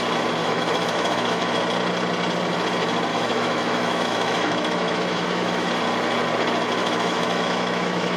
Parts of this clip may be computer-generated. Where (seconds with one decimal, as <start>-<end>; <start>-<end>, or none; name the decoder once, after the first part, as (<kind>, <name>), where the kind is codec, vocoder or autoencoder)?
0.4-1.6 (autoencoder, DAC-VAE); 3.1-5.7; 6.8-8.2